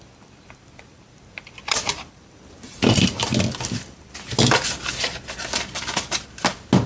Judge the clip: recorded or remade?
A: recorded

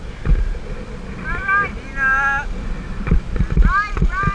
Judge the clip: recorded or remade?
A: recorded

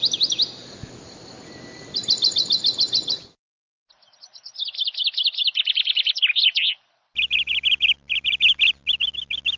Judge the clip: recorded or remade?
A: recorded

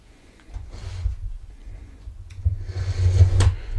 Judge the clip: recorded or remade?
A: remade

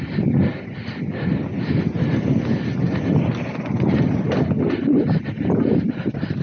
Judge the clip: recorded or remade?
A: recorded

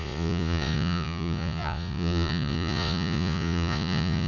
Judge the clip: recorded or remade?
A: remade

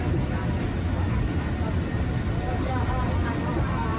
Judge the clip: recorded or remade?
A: recorded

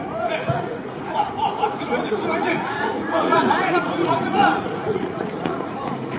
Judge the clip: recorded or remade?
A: remade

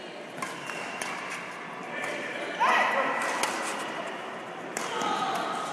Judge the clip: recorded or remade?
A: recorded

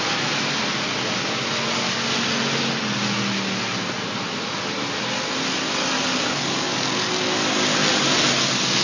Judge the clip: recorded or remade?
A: recorded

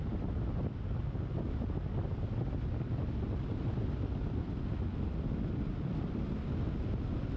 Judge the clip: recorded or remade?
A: recorded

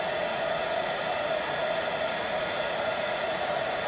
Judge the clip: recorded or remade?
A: remade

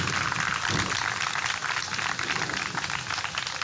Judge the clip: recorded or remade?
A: recorded